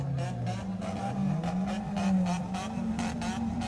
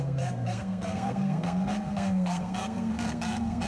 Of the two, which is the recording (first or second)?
first